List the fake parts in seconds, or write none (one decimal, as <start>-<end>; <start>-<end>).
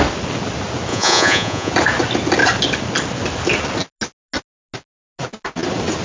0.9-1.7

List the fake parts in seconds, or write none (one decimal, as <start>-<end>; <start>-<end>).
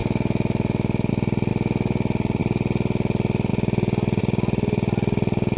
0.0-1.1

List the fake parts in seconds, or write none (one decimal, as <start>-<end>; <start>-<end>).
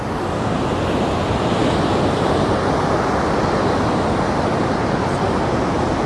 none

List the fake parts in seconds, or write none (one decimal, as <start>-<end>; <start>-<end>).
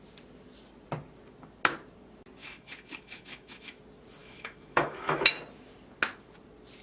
2.4-3.8; 4.2-5.3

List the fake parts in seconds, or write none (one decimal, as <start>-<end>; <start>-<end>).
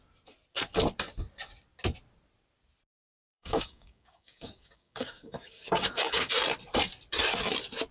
2.9-6.3